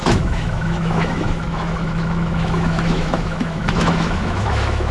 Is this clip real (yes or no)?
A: no